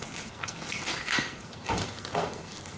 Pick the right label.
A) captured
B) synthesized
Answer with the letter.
B